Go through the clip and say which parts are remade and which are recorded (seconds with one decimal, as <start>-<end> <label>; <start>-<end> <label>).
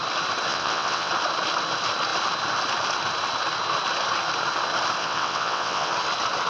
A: 0.0-0.5 recorded; 0.5-1.1 remade; 1.1-5.0 recorded; 5.0-5.9 remade; 5.9-6.5 recorded